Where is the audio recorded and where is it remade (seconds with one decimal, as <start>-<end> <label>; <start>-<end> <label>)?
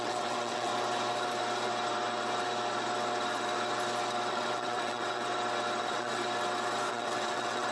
0.0-0.7 remade; 0.7-4.3 recorded; 4.3-5.3 remade; 5.3-5.8 recorded; 5.8-6.2 remade; 6.2-6.9 recorded; 6.9-7.7 remade